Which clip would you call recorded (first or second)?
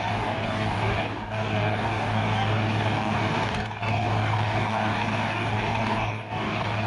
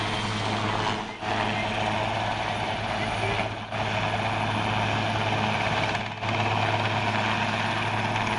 second